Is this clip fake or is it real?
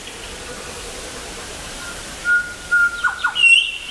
real